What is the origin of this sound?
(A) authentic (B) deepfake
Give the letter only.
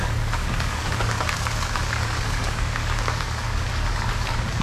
B